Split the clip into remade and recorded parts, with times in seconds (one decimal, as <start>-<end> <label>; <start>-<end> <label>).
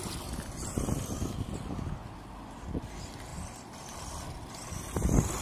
0.0-3.3 recorded; 3.3-4.7 remade; 4.7-5.4 recorded